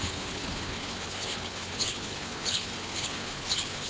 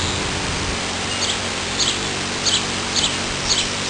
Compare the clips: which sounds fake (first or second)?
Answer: first